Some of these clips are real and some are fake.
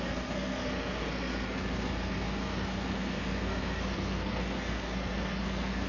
fake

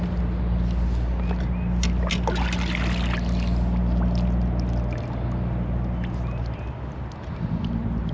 real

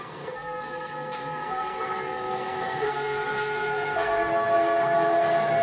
fake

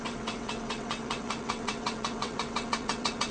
fake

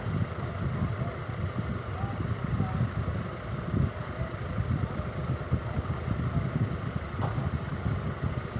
real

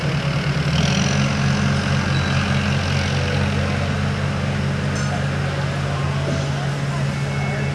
real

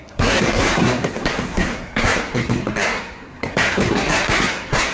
fake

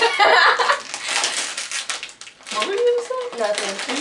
real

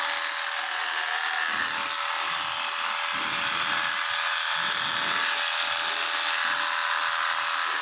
real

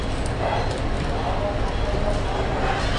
real